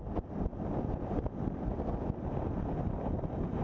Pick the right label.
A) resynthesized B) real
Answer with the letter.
B